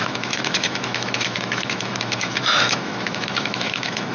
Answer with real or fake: fake